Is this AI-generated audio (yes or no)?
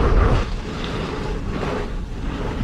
no